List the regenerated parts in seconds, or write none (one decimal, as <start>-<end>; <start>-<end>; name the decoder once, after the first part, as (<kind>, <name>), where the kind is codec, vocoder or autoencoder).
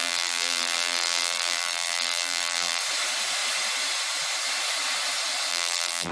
0.0-2.8 (vocoder, BigVGAN v2); 5.5-6.1